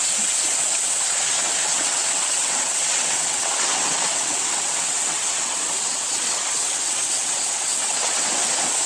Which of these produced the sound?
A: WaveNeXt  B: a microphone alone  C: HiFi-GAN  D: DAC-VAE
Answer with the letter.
A